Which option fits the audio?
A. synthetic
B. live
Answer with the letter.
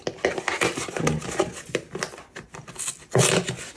B